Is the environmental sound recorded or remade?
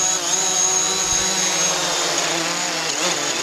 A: recorded